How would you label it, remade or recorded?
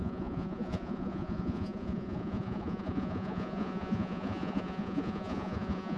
remade